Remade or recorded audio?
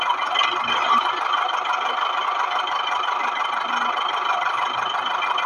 recorded